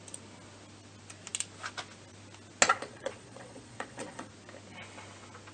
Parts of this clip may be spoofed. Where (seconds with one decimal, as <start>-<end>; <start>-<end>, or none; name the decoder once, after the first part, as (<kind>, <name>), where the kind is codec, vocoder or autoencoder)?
2.7-4.3 (vocoder, Vocos)